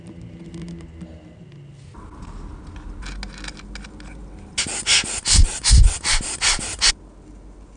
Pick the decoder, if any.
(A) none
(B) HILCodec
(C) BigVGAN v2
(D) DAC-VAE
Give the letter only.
A